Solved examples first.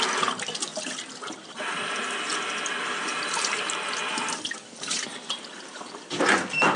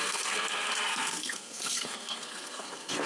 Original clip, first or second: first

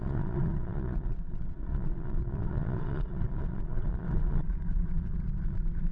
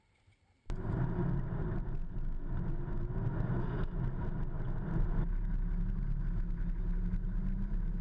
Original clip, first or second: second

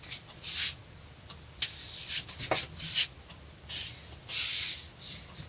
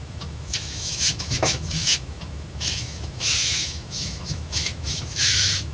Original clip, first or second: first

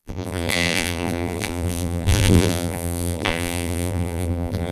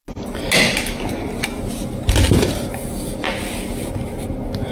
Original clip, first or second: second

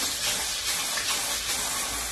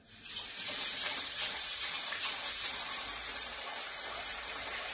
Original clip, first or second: first